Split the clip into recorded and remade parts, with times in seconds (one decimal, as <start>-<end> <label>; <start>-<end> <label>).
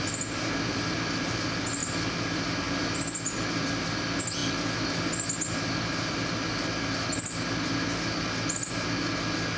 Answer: 0.0-9.6 recorded